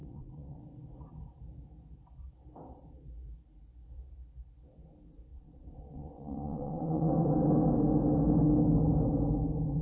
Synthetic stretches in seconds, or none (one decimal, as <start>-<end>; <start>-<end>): 0.0-0.6; 5.3-7.1